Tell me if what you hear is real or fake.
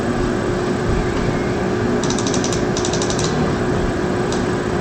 fake